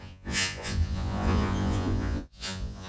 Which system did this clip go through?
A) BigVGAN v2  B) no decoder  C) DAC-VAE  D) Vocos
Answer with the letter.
D